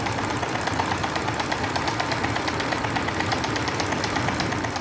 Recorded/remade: recorded